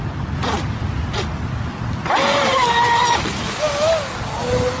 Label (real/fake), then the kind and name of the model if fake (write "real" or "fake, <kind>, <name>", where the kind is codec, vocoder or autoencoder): real